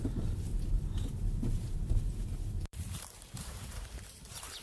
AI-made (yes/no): yes